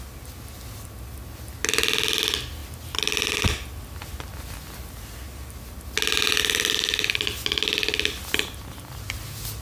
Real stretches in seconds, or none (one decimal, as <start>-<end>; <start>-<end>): 0.0-9.6